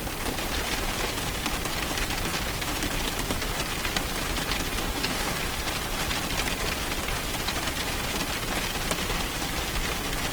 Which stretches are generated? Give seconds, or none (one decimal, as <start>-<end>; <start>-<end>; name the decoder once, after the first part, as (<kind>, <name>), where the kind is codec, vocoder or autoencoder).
4.8-5.4 (codec, DAC)